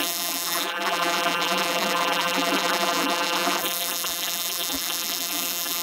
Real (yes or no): no